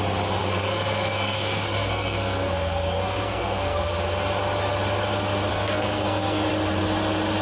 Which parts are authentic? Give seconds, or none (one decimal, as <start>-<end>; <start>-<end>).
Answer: 0.0-0.4; 3.9-5.5; 6.5-7.4